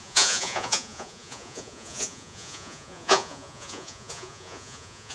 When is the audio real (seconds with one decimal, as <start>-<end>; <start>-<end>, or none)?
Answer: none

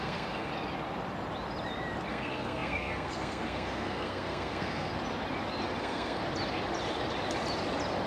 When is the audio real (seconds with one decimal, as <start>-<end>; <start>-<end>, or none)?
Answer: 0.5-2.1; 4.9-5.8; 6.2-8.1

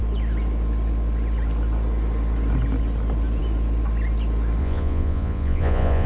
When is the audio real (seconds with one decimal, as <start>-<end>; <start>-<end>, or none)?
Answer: 0.0-4.6

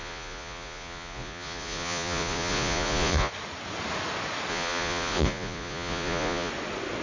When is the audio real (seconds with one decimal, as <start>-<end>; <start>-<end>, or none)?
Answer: 3.3-4.5; 6.5-7.0

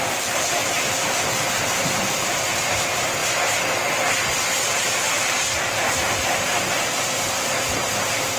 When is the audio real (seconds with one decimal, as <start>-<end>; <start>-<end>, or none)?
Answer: 3.2-5.1